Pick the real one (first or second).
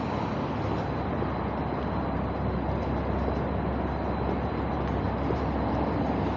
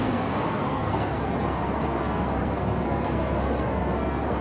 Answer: first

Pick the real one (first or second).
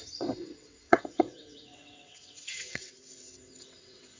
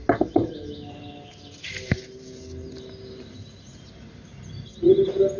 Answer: second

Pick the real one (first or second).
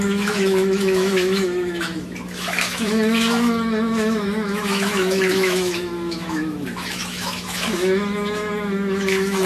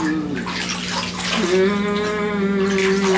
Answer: second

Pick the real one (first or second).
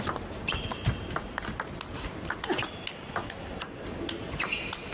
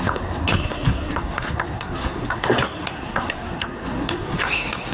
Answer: first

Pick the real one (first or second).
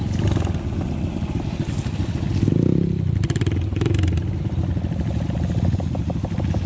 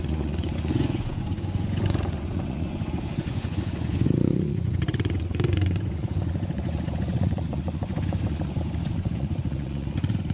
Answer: first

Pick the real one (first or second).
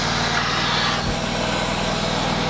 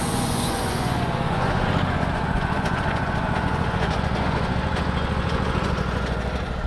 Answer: first